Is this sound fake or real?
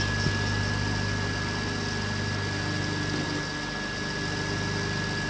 real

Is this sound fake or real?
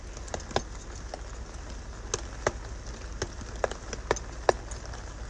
real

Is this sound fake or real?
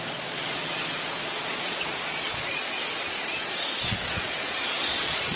fake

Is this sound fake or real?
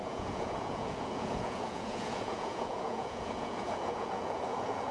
fake